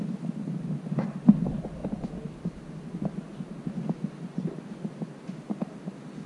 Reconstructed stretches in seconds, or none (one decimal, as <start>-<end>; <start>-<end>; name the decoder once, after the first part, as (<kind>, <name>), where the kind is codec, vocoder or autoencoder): 1.8-2.7 (vocoder, BigVGAN v2); 4.3-4.9